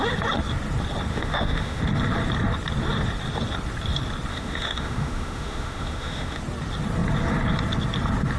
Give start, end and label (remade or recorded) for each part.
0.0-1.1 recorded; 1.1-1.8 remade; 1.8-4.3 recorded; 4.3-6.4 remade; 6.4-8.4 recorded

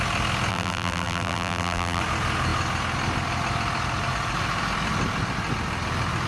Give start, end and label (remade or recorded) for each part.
0.0-0.5 recorded; 0.5-2.0 remade; 2.0-6.3 recorded